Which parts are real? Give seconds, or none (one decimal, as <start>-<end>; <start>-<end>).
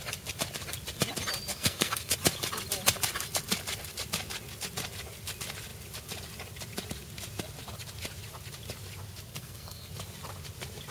0.0-1.5; 2.1-9.3; 9.9-10.9